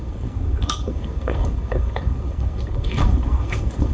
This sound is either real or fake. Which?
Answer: fake